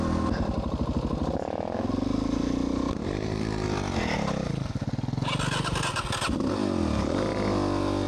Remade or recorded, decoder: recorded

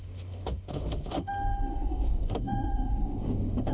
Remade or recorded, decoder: remade, autoencoder, DAC-VAE